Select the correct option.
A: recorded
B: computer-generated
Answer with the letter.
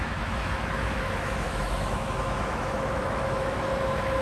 B